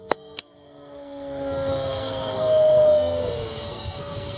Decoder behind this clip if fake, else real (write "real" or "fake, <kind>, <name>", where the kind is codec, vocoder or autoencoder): fake, codec, SNAC